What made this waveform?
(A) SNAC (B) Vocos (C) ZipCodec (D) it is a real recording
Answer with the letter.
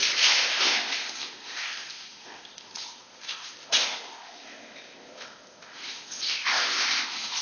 C